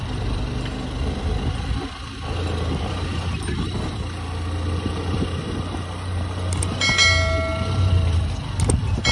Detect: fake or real real